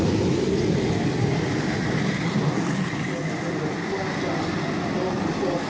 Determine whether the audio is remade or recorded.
recorded